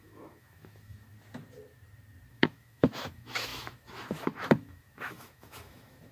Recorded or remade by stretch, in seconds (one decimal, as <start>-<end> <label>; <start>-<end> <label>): 0.0-1.1 remade; 1.1-2.3 recorded; 2.3-6.1 remade